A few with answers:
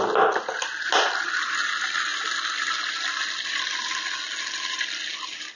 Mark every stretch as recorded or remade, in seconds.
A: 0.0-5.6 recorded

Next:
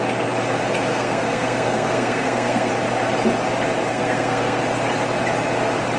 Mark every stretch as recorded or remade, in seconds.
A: 0.0-0.9 recorded; 0.9-2.7 remade; 2.7-3.9 recorded; 3.9-4.6 remade; 4.6-6.0 recorded

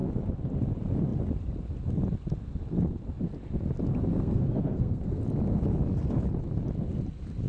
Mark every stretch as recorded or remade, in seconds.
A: 0.0-4.1 recorded; 4.1-5.2 remade; 5.2-7.5 recorded

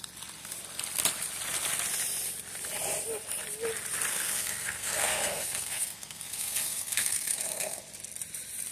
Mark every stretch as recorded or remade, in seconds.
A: 0.0-4.1 recorded; 4.1-7.8 remade; 7.8-8.7 recorded